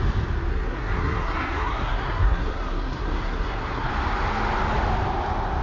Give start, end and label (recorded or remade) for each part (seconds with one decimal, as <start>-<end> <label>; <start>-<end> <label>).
0.0-0.5 recorded; 0.5-3.9 remade; 3.9-5.6 recorded